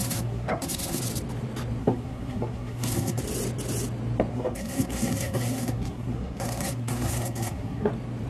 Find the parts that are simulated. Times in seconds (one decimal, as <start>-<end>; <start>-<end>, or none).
0.0-1.0; 1.8-3.2; 4.3-7.9